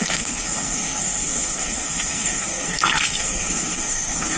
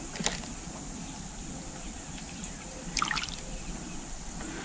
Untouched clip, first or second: second